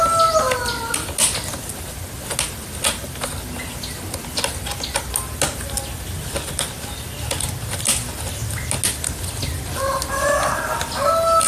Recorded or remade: recorded